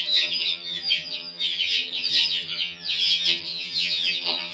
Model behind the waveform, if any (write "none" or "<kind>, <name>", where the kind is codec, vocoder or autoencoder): vocoder, HiFi-GAN